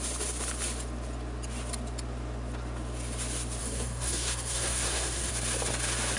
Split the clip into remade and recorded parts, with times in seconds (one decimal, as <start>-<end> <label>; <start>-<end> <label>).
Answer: 0.0-3.6 recorded; 3.6-5.3 remade; 5.3-6.2 recorded